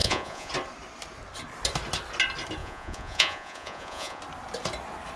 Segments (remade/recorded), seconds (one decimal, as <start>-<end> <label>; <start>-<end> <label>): 0.0-0.5 remade; 0.5-2.6 recorded; 2.6-4.2 remade; 4.2-5.2 recorded